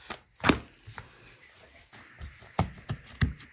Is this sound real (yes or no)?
yes